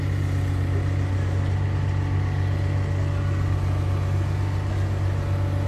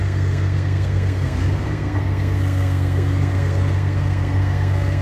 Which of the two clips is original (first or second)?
first